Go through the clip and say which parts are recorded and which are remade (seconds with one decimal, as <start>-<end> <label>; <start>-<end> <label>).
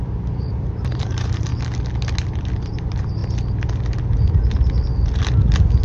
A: 0.0-1.5 remade; 1.5-2.7 recorded; 2.7-3.2 remade; 3.2-5.8 recorded